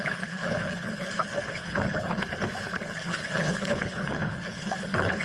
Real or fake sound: fake